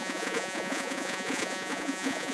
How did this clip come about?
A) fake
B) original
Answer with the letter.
A